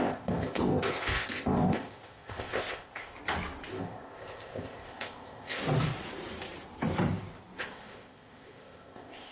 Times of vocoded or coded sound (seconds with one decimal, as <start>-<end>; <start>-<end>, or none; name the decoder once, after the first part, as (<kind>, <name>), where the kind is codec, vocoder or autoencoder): 0.0-3.2 (codec, ZipCodec); 3.7-5.6; 7.6-9.3